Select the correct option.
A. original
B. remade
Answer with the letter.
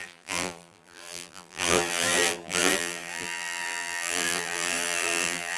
B